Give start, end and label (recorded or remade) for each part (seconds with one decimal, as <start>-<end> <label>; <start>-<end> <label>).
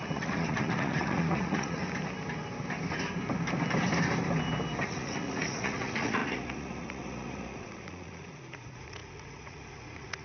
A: 0.0-1.8 remade; 1.8-4.8 recorded; 4.8-10.2 remade